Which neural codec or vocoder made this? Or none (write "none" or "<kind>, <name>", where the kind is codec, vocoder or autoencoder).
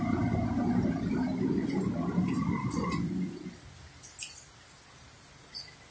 none